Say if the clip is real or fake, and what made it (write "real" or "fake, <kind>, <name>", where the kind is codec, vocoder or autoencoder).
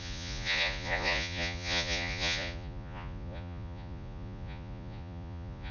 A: fake, vocoder, Vocos